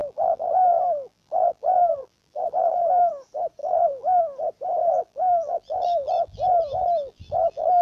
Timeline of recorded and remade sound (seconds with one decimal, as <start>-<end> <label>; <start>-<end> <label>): 0.0-3.1 remade; 3.1-3.6 recorded; 3.6-4.2 remade; 4.2-4.8 recorded; 4.8-7.8 remade